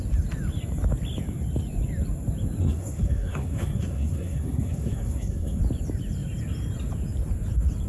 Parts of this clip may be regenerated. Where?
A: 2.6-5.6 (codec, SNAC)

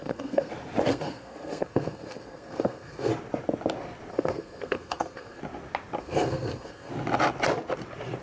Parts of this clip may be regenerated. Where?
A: 0.0-0.5 (codec, SNAC); 0.9-3.1; 4.1-5.4; 6.0-6.9

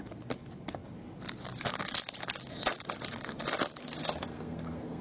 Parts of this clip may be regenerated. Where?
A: 3.8-5.0 (codec, SNAC)

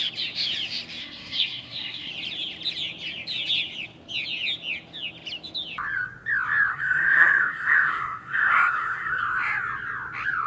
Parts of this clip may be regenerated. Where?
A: 1.0-2.1 (codec, SNAC); 6.7-9.2

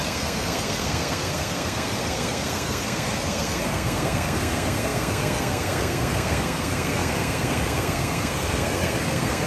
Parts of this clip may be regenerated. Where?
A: 0.0-9.5 (codec, SNAC)

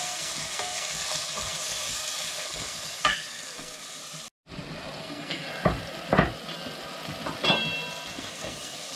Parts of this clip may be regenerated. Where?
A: 0.0-4.0 (codec, SNAC); 5.0-5.5; 8.1-9.0

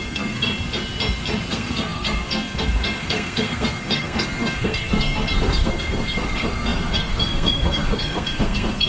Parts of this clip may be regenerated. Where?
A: 0.0-0.5 (codec, SNAC); 1.5-8.9